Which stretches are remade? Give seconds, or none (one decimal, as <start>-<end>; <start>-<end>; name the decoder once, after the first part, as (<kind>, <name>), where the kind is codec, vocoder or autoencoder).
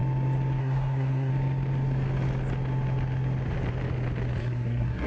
0.6-1.3 (codec, SNAC); 4.4-5.1